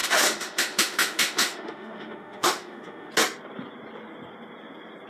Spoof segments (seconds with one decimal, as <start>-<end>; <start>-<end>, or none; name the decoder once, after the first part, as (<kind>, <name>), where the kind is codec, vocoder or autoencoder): 0.0-3.1 (autoencoder, DAC-VAE)